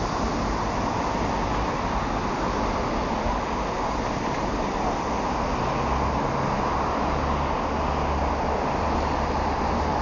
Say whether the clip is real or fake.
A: real